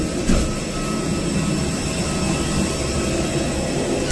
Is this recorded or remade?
recorded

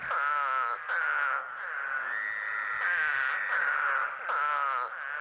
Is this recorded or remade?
recorded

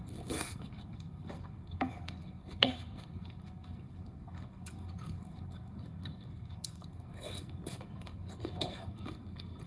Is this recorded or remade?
remade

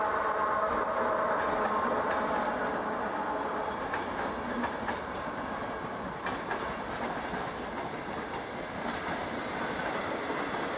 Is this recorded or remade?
recorded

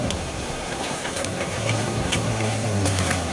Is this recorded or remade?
remade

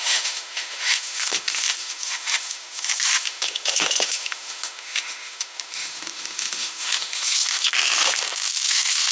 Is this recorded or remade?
remade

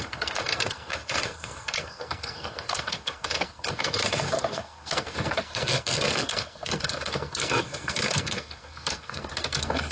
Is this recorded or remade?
remade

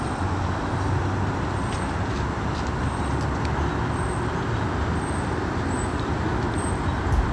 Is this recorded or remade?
recorded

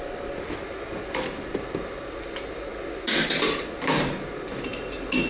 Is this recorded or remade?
recorded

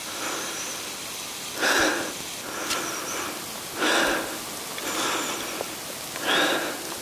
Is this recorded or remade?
recorded